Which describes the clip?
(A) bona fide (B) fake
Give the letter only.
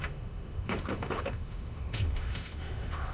B